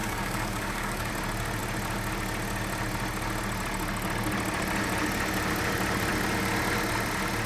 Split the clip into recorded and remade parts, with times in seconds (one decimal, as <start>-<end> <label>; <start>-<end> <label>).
0.0-1.1 remade; 1.1-7.5 recorded